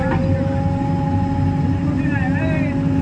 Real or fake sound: real